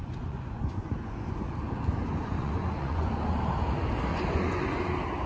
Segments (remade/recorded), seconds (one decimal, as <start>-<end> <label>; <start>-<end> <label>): 0.0-1.5 remade; 1.5-2.2 recorded; 2.2-3.1 remade; 3.1-4.1 recorded; 4.1-4.8 remade; 4.8-5.3 recorded